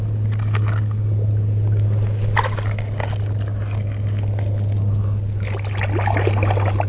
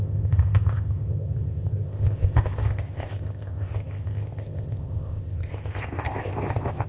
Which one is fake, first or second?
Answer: second